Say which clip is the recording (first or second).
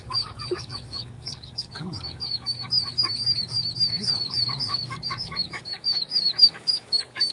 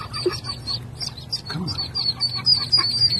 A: second